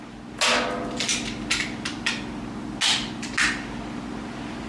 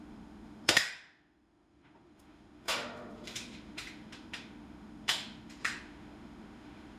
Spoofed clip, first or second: second